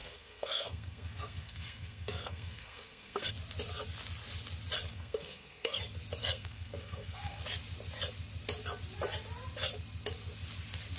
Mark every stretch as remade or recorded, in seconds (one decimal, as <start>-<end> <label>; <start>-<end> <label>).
0.0-3.3 remade; 3.3-4.9 recorded; 4.9-5.8 remade; 5.8-6.2 recorded; 6.2-7.4 remade; 7.4-11.0 recorded